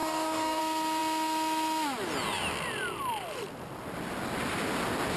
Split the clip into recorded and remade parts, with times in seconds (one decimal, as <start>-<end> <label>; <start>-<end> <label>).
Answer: 0.0-0.6 remade; 0.6-5.2 recorded